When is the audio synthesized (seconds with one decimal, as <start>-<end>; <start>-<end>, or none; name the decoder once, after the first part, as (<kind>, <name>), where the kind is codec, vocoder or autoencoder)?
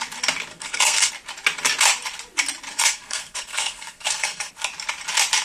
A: 0.5-1.1 (codec, SNAC); 2.7-4.5